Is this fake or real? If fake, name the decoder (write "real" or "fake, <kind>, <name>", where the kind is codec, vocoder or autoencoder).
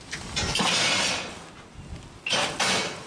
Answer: real